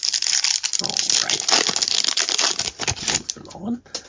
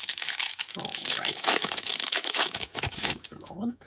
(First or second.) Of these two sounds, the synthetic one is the second